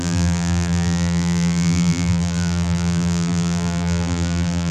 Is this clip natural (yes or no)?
no